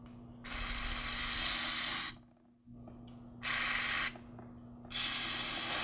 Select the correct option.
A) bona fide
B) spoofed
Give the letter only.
A